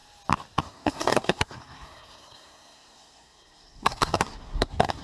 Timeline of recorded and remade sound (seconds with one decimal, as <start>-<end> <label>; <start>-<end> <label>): 0.0-0.6 recorded; 0.6-5.0 remade